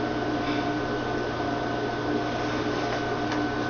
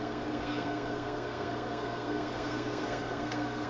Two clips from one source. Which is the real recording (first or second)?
first